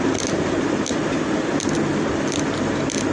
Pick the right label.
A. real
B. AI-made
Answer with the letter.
A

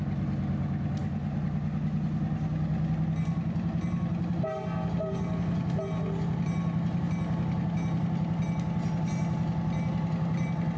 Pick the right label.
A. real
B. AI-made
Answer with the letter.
A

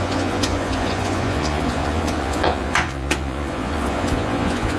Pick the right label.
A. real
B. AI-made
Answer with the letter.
B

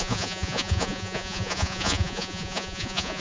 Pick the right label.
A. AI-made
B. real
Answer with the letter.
A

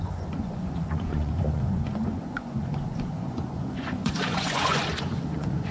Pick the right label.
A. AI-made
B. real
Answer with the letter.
A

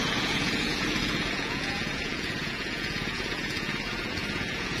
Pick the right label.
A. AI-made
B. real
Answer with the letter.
A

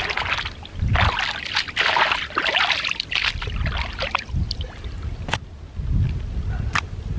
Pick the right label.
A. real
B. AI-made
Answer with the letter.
A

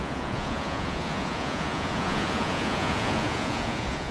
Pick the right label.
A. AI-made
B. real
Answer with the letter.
A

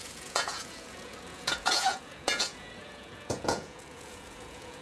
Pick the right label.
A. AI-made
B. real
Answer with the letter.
A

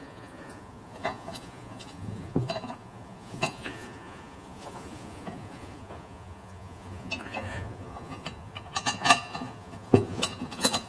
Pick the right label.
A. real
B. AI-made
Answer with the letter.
B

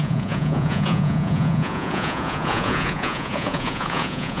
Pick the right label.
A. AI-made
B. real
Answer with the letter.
A